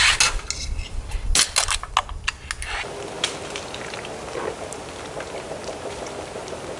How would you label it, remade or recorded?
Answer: recorded